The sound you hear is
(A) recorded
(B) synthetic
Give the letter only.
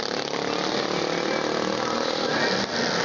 A